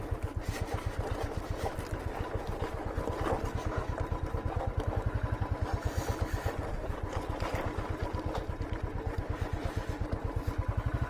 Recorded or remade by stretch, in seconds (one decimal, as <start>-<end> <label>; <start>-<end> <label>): 0.0-8.0 recorded; 8.0-9.5 remade; 9.5-11.1 recorded